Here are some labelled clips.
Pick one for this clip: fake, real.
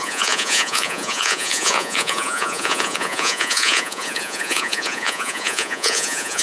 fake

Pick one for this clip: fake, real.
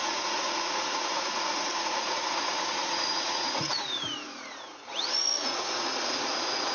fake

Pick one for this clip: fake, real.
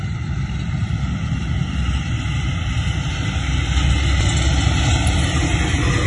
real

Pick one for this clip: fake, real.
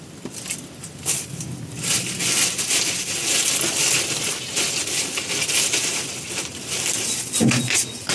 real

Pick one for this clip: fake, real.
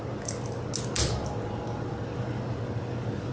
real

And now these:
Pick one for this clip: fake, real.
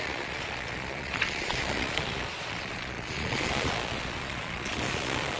fake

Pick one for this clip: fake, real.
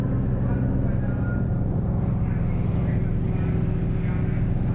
real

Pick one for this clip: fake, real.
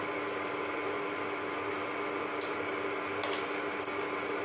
real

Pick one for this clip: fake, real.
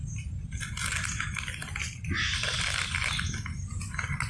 real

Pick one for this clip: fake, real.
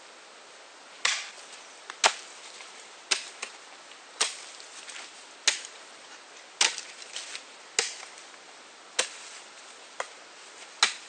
real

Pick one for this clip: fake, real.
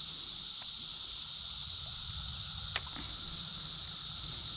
real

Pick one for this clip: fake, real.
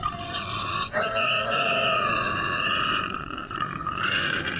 fake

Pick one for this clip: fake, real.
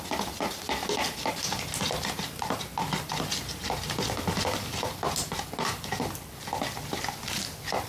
real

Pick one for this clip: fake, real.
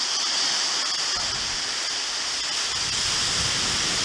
real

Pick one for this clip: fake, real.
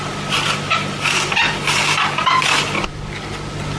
real